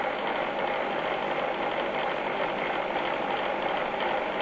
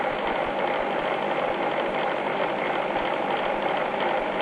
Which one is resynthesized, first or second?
second